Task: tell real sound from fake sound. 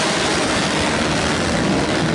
real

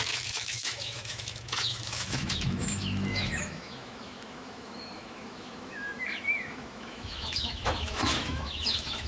fake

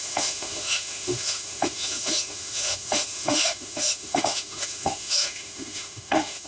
fake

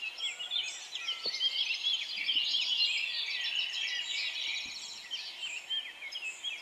real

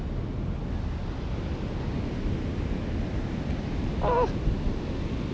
real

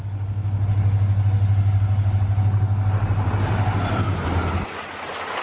real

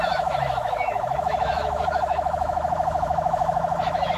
fake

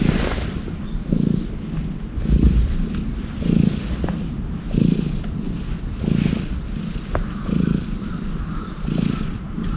real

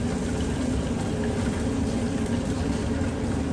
real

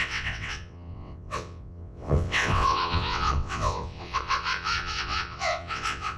fake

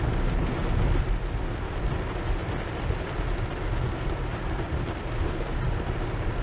real